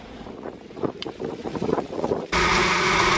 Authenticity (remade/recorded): remade